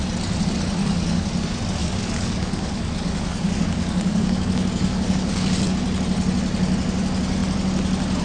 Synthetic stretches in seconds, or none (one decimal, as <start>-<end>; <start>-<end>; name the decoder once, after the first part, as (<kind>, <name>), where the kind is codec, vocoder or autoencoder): 0.8-1.3 (codec, DAC); 1.8-5.7